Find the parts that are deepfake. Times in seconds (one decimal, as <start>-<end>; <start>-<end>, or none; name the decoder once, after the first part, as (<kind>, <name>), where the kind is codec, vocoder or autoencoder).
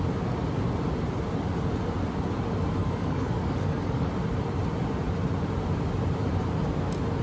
2.8-4.1 (codec, DAC)